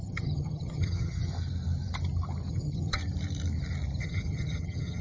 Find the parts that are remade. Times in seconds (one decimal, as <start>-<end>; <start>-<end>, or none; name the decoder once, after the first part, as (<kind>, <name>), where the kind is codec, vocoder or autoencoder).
0.0-1.3 (vocoder, HiFi-GAN); 2.5-3.0; 4.0-5.0